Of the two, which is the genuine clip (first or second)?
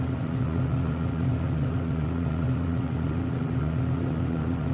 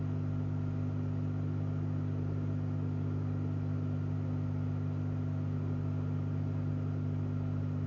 second